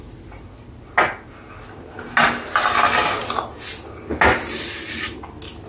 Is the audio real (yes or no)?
yes